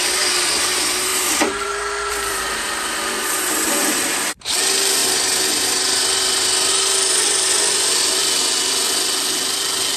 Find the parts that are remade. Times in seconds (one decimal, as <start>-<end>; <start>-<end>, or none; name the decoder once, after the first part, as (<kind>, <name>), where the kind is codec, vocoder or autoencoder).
1.1-4.4 (vocoder, BigVGAN v2); 5.0-6.7